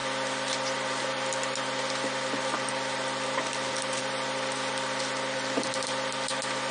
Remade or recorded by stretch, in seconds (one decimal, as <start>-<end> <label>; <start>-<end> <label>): 0.0-6.7 recorded